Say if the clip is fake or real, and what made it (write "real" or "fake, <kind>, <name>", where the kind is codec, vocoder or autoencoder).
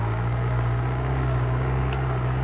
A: fake, codec, DAC